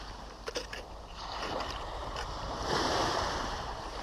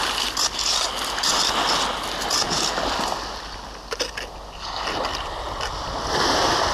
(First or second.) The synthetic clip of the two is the first